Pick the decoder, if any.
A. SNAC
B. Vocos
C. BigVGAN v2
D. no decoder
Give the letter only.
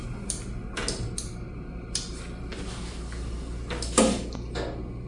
D